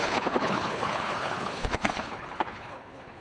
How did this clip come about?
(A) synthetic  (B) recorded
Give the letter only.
A